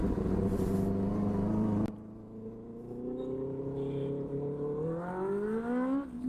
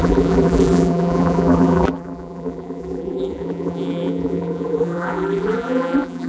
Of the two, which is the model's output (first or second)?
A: second